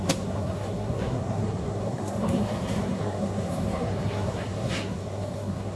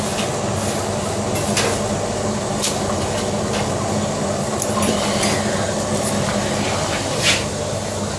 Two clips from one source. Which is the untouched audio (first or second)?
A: second